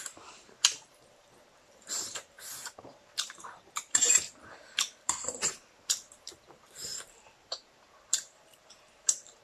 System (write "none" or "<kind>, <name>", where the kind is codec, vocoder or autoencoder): vocoder, BigVGAN v2